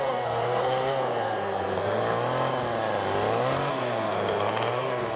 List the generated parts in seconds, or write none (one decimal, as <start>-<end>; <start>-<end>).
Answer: 0.0-2.0; 3.7-5.2